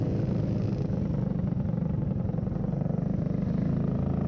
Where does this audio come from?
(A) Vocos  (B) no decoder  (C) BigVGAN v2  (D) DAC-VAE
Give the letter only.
B